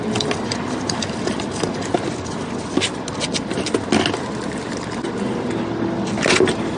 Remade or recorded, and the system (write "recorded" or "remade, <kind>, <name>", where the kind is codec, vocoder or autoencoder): recorded